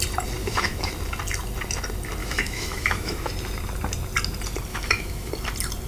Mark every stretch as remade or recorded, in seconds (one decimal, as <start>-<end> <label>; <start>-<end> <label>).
0.0-0.4 recorded; 0.4-0.9 remade; 0.9-2.2 recorded; 2.2-3.3 remade; 3.3-4.7 recorded; 4.7-5.3 remade; 5.3-5.9 recorded

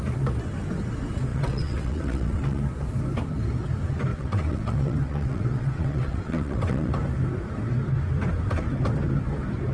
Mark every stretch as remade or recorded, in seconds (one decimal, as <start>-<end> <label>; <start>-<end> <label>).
0.0-1.3 recorded; 1.3-2.6 remade; 2.6-4.1 recorded; 4.1-6.9 remade; 6.9-9.7 recorded

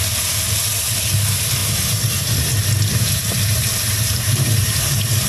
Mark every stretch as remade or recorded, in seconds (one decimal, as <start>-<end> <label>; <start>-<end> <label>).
0.0-2.9 recorded; 2.9-5.3 remade

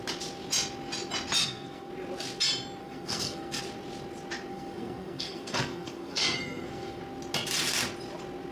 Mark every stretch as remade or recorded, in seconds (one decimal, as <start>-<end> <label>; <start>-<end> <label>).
0.0-1.4 recorded; 1.4-1.9 remade; 1.9-2.8 recorded; 2.8-3.6 remade; 3.6-4.5 recorded; 4.5-7.0 remade; 7.0-8.5 recorded

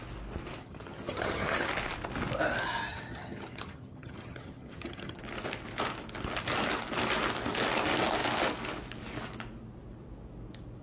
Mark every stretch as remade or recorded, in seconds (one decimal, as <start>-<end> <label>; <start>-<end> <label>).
0.0-0.6 recorded; 0.6-1.7 remade; 1.7-2.9 recorded; 2.9-5.2 remade; 5.2-10.8 recorded